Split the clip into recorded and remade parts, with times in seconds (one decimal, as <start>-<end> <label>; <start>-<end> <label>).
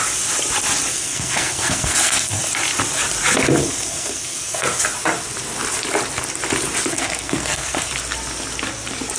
0.0-0.9 recorded; 0.9-2.4 remade; 2.4-3.6 recorded; 3.6-4.8 remade; 4.8-6.9 recorded; 6.9-7.9 remade; 7.9-9.2 recorded